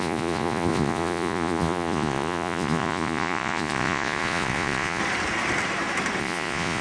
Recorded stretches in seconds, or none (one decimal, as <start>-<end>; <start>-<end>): 5.0-6.2